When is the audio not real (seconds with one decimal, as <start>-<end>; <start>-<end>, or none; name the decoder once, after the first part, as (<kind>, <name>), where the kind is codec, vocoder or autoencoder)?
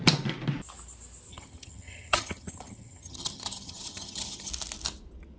1.3-4.5 (vocoder, HiFi-GAN)